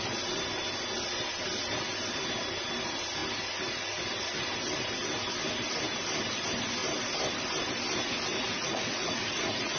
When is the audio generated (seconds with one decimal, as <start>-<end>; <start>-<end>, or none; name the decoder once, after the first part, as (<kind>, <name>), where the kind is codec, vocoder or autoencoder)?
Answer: 8.3-9.8 (vocoder, Vocos)